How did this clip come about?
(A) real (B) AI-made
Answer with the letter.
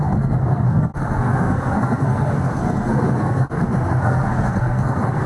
B